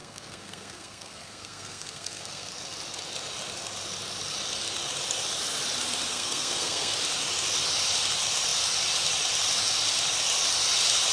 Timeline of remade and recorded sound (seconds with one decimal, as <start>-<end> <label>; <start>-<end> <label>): 0.0-2.5 remade; 2.5-6.1 recorded; 6.1-6.9 remade; 6.9-11.1 recorded